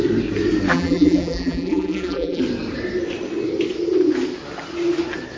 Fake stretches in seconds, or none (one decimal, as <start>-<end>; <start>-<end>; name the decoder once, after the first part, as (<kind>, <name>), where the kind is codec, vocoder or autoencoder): 0.7-2.4 (vocoder, BigVGAN v2)